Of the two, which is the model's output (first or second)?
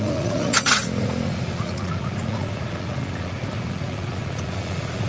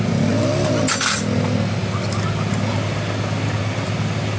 first